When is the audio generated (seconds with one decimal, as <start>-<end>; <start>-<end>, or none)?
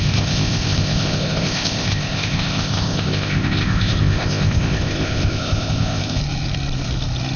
0.0-6.2